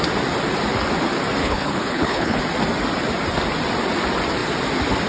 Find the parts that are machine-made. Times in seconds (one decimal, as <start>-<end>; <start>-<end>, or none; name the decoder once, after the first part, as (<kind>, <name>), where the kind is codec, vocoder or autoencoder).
1.4-2.4 (codec, HILCodec)